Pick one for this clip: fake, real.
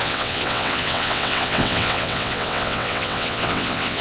fake